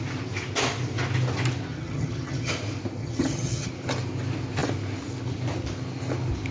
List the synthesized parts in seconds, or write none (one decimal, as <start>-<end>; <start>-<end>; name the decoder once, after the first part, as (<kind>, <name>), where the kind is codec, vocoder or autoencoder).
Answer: 1.7-2.5 (vocoder, HiFi-GAN); 3.0-3.7